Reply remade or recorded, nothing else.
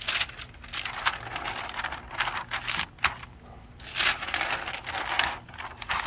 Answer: recorded